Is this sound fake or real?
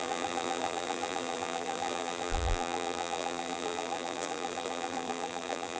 fake